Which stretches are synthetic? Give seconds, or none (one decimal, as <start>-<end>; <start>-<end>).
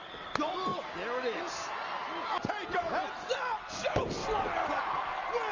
none